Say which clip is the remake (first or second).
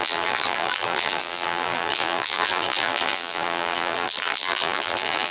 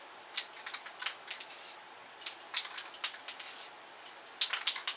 first